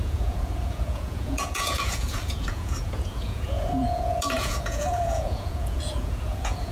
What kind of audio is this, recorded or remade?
remade